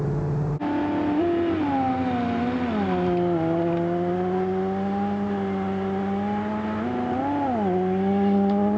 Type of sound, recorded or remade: recorded